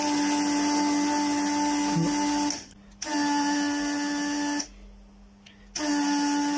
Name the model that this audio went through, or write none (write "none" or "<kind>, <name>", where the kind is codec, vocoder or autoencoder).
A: none